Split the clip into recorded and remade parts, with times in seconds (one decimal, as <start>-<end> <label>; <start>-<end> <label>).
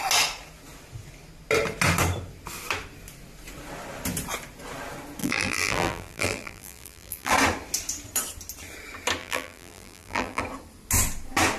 0.0-5.2 recorded; 5.2-7.3 remade; 7.3-9.2 recorded; 9.2-10.4 remade; 10.4-11.6 recorded